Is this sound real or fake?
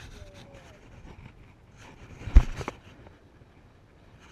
real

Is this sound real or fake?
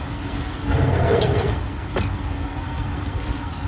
fake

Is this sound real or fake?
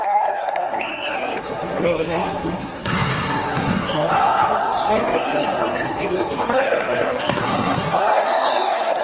fake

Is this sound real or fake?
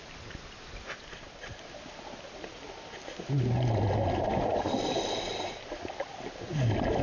real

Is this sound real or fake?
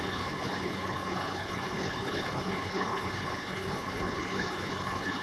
fake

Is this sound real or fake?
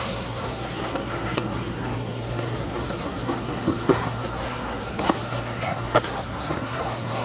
fake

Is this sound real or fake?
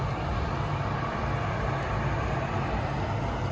real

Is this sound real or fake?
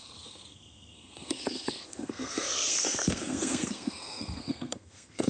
fake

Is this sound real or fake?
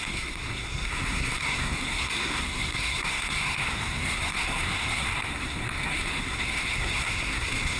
fake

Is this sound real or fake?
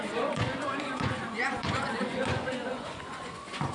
fake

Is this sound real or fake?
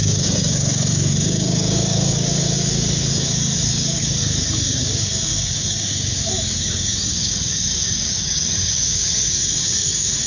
fake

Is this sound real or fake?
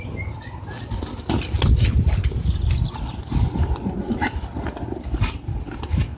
real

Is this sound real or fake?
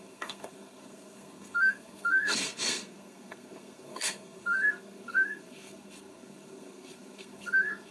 fake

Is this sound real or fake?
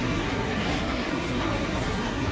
fake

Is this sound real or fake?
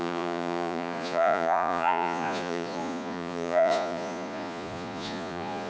fake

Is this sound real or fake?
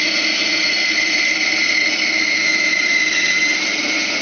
real